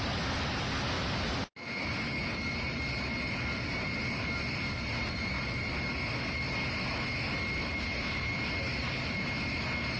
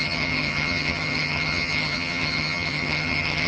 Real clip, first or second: first